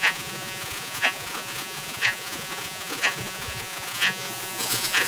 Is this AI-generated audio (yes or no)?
yes